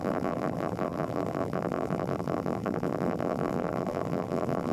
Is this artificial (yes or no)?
yes